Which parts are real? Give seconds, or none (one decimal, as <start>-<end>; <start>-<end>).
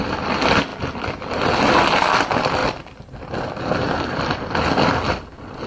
0.0-0.7; 1.8-5.7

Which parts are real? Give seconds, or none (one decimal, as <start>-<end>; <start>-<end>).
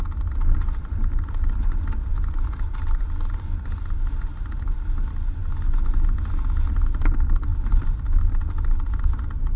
0.0-2.1; 3.8-7.5; 8.9-9.6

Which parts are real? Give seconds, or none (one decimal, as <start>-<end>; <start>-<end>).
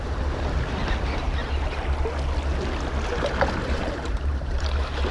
1.4-3.6